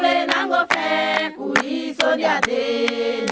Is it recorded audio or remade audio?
recorded